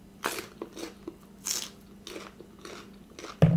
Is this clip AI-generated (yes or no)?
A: no